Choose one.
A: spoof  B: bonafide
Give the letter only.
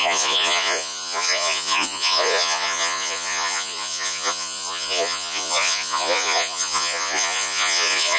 A